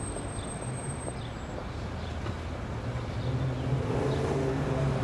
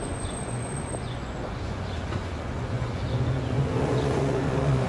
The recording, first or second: first